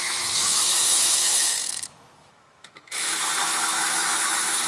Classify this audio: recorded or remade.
remade